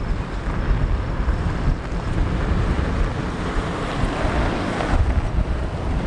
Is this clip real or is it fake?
real